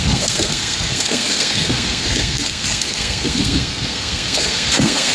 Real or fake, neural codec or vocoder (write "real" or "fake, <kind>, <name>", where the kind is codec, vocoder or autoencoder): fake, codec, SNAC